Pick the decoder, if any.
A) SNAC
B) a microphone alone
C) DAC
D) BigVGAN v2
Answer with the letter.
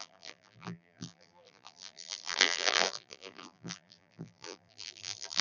D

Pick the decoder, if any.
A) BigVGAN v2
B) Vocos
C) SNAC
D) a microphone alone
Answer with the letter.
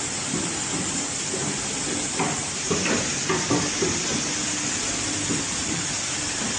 D